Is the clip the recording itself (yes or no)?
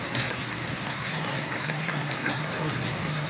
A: no